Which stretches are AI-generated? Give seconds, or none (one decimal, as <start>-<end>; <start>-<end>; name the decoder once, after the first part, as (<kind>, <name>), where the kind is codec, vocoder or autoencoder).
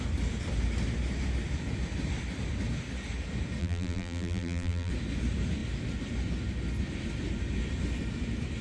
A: 3.6-4.9 (vocoder, BigVGAN v2)